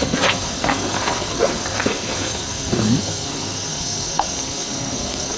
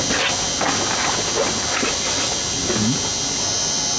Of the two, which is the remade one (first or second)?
first